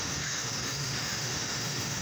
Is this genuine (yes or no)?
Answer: no